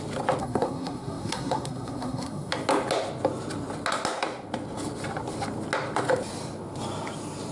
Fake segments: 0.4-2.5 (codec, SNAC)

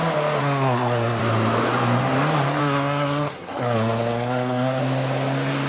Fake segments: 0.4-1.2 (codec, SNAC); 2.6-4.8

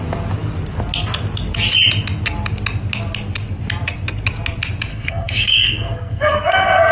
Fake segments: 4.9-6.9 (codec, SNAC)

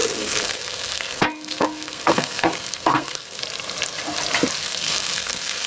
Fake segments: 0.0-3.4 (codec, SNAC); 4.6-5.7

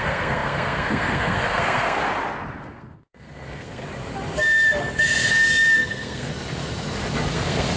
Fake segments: 0.0-2.0 (codec, SNAC); 2.6-3.8; 5.3-6.3; 7.3-7.8

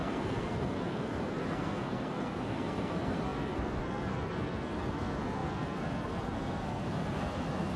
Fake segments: 0.0-7.8 (codec, SNAC)